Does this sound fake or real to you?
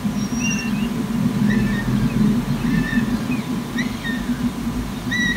real